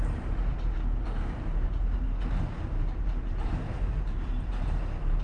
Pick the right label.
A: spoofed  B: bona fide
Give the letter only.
A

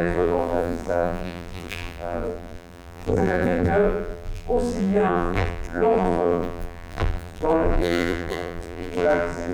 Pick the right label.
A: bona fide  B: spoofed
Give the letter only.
B